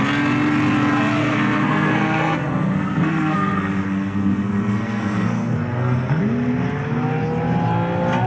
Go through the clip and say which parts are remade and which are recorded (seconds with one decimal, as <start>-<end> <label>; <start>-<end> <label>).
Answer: 0.0-1.2 recorded; 1.2-6.2 remade; 6.2-8.3 recorded